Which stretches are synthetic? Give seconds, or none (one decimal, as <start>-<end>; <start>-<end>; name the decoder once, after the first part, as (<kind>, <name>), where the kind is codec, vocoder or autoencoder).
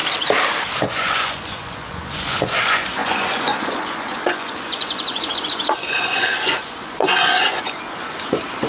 0.8-8.7 (vocoder, Vocos)